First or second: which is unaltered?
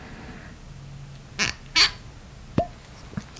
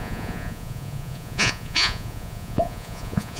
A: first